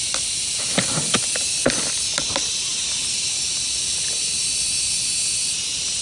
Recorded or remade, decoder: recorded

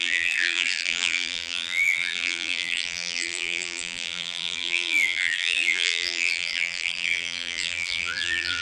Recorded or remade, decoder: remade, vocoder, BigVGAN v2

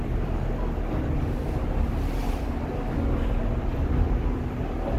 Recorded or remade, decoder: recorded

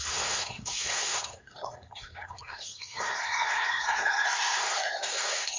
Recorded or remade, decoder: remade, codec, SNAC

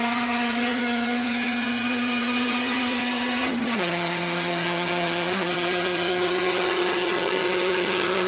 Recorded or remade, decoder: remade, vocoder, HiFi-GAN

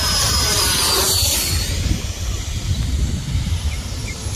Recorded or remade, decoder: recorded